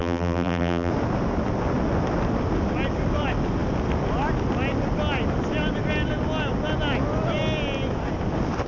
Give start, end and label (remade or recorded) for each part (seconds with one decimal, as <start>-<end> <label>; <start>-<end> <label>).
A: 0.0-0.9 remade; 0.9-8.7 recorded